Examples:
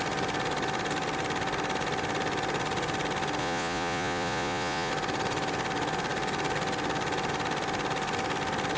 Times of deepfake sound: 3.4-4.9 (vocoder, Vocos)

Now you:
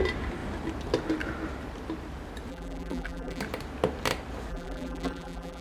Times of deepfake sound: 2.5-3.4 (vocoder, BigVGAN v2); 4.5-5.6

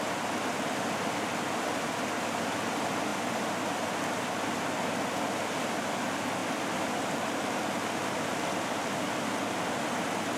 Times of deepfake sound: 6.4-7.1 (vocoder, BigVGAN v2)

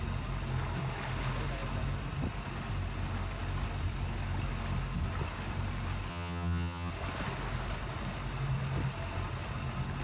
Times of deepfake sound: 6.1-6.9 (vocoder, HiFi-GAN)

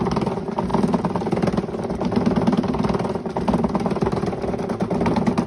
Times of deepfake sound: none

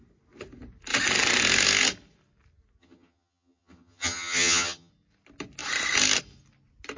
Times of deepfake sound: 2.8-4.9 (vocoder, HiFi-GAN)

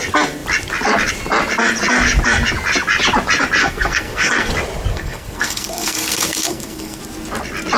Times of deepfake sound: 3.6-4.5 (codec, SNAC); 4.9-7.0